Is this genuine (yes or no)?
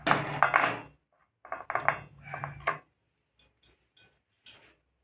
yes